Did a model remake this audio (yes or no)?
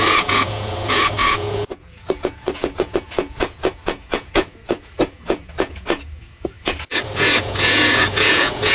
yes